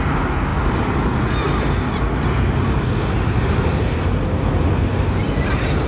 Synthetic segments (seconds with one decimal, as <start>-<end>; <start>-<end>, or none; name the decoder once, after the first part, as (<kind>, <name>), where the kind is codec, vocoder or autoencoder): none